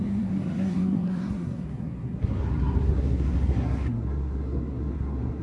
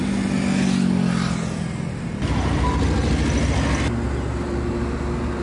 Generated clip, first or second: first